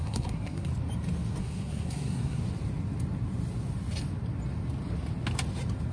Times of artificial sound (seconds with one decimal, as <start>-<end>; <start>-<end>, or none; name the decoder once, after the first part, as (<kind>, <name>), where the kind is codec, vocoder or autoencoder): 0.0-0.7 (codec, SNAC); 1.4-2.4